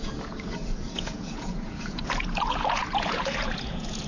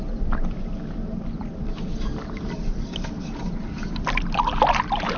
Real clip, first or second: second